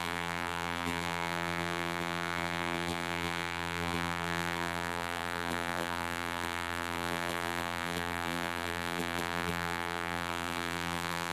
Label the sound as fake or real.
fake